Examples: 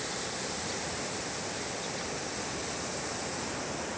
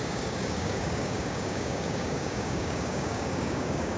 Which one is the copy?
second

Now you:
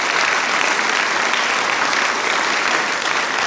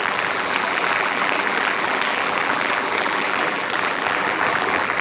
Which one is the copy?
second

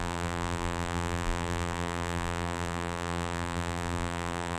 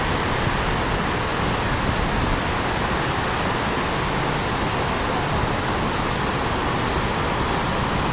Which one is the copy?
first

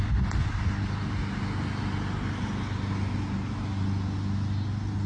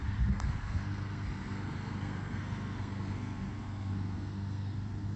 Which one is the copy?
second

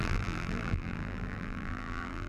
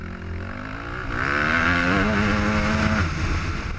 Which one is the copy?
first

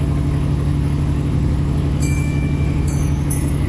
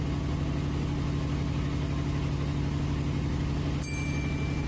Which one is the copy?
first